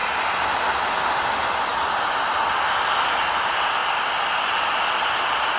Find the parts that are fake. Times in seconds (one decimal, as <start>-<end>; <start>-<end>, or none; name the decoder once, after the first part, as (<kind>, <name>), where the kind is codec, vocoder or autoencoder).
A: none